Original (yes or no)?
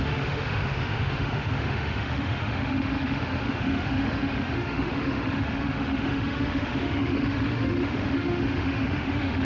no